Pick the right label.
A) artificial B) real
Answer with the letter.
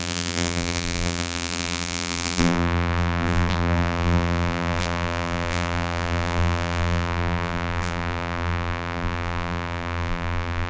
A